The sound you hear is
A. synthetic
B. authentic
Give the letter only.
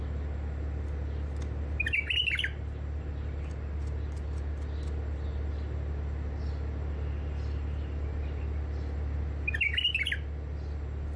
B